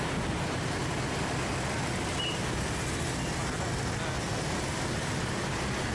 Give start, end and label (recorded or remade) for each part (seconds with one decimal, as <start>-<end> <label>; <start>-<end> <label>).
0.0-5.9 recorded